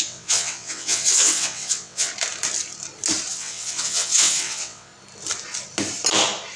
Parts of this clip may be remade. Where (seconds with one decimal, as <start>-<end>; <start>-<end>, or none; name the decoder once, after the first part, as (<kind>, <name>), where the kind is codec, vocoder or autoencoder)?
0.0-2.1 (vocoder, WaveNeXt); 3.3-4.9